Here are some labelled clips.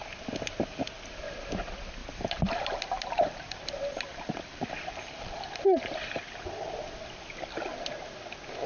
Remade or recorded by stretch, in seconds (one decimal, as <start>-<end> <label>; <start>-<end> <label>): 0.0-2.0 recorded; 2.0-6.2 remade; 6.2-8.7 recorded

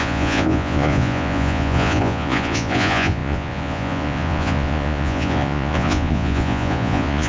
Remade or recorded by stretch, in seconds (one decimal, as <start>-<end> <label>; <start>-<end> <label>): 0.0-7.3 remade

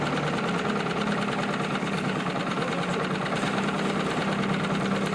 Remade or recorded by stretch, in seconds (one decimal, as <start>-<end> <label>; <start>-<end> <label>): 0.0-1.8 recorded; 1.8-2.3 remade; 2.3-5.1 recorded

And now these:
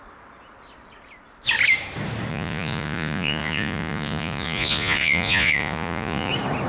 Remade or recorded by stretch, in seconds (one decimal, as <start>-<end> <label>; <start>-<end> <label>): 0.0-2.3 recorded; 2.3-6.3 remade; 6.3-6.7 recorded

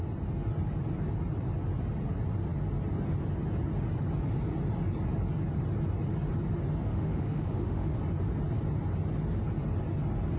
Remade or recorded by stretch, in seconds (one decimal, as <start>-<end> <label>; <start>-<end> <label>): 0.0-6.9 recorded; 6.9-8.0 remade; 8.0-10.4 recorded

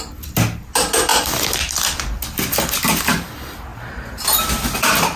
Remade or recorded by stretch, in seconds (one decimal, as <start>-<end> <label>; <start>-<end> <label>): 0.0-5.2 recorded

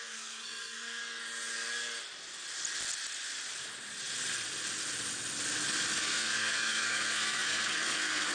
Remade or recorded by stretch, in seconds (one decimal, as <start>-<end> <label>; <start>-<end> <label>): 0.0-1.0 remade; 1.0-6.0 recorded; 6.0-8.3 remade